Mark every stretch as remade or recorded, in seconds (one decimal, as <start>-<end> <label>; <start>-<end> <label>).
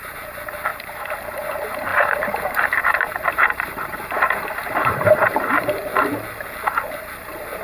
0.0-5.9 remade; 5.9-6.9 recorded; 6.9-7.6 remade